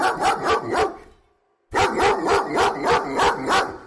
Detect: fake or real real